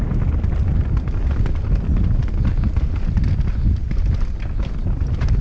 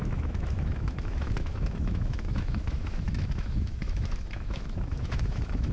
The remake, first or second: second